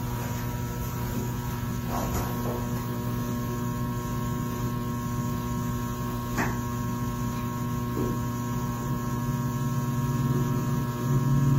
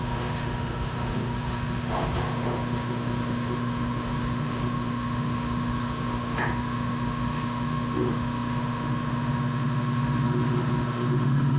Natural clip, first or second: first